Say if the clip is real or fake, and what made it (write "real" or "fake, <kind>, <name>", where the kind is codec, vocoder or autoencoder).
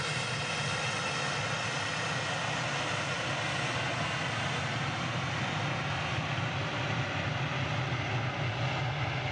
real